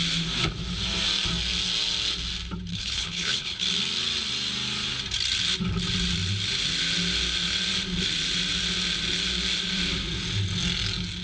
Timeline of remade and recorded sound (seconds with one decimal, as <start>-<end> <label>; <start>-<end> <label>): 0.0-2.7 recorded; 2.7-3.6 remade; 3.6-11.2 recorded